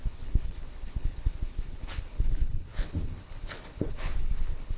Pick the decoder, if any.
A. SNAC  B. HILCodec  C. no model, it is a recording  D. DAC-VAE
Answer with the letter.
B